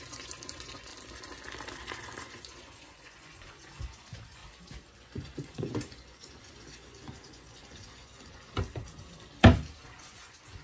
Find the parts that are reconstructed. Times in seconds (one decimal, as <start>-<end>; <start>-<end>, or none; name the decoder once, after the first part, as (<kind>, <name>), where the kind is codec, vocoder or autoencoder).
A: 0.0-0.9 (vocoder, Vocos); 1.9-4.4; 4.9-8.5; 9.8-10.6